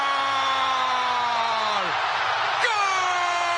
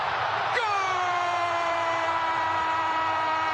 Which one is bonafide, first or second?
first